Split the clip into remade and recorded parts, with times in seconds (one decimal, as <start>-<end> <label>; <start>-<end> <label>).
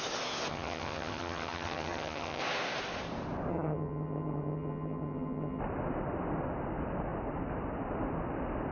0.0-0.5 recorded; 0.5-2.4 remade; 2.4-3.5 recorded; 3.5-5.6 remade; 5.6-8.7 recorded